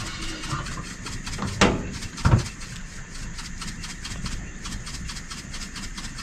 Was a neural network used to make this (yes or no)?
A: no